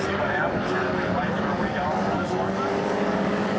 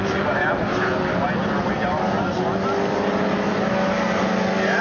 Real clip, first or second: second